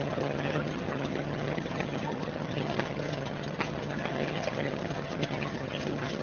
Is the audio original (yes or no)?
no